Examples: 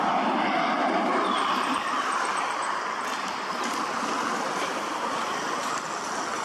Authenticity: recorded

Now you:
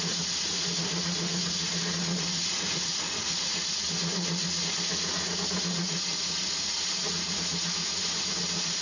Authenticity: remade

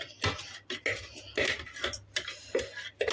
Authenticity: recorded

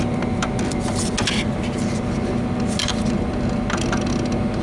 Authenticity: recorded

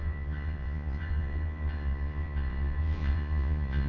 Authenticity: remade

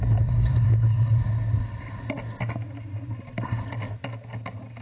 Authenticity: recorded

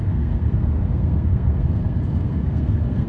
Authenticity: remade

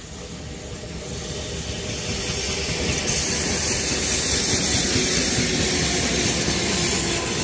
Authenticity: recorded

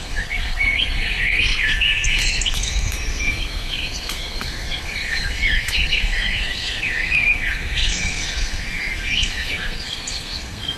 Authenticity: remade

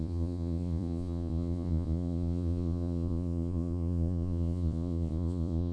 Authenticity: remade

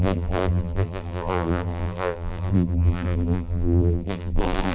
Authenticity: remade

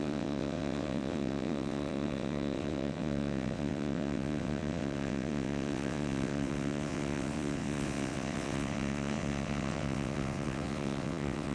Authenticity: remade